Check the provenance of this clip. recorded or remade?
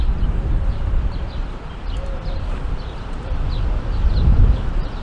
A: recorded